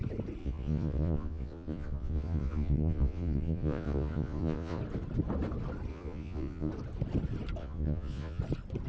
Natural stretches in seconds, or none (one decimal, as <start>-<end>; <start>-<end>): 0.0-0.4; 4.8-5.9; 6.7-7.6; 8.4-8.9